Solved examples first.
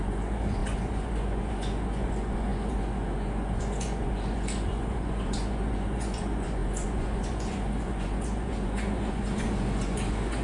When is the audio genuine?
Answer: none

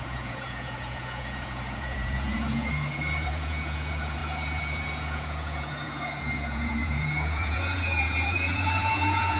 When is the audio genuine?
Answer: none

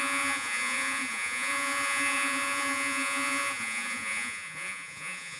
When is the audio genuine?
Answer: none

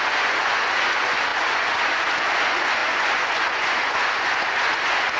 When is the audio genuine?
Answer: none

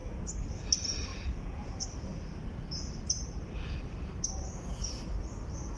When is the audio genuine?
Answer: 0.0-1.1; 1.7-5.8